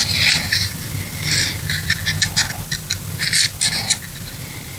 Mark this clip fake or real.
real